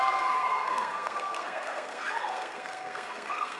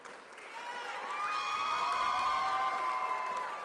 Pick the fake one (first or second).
first